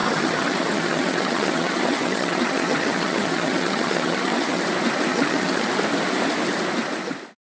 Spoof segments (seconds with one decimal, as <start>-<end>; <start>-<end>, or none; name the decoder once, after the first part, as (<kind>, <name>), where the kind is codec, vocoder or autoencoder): 0.0-4.6 (vocoder, HiFi-GAN); 5.1-5.7